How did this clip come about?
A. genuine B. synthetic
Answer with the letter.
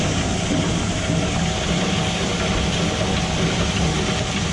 A